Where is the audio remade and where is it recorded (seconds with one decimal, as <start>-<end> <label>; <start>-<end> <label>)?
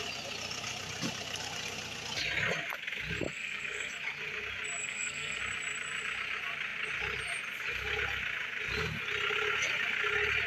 0.0-3.3 recorded; 3.3-3.9 remade; 3.9-4.8 recorded; 4.8-5.4 remade; 5.4-10.5 recorded